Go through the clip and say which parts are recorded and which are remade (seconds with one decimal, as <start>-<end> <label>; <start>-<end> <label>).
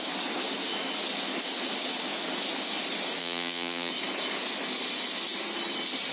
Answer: 0.0-3.2 recorded; 3.2-3.9 remade; 3.9-6.1 recorded